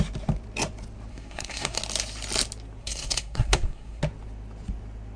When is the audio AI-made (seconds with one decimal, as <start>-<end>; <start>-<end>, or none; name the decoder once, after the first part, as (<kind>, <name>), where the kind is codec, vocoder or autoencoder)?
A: 1.1-1.8 (codec, SNAC); 2.8-4.0